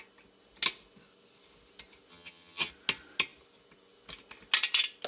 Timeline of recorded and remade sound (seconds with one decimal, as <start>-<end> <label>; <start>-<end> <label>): 0.0-2.1 recorded; 2.1-2.7 remade; 2.7-5.1 recorded